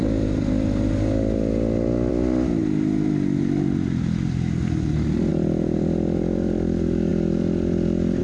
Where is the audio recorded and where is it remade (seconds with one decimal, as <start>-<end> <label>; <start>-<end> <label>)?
0.0-8.2 recorded